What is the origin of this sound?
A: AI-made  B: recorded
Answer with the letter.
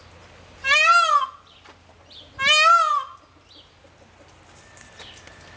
B